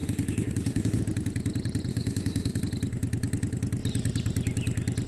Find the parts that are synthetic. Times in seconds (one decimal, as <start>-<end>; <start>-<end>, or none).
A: 0.0-1.0; 1.9-2.6